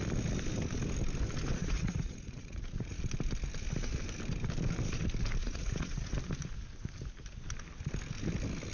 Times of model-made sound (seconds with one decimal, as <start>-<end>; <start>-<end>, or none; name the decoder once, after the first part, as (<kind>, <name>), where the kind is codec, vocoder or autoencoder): 1.6-3.0 (vocoder, Vocos); 5.4-6.1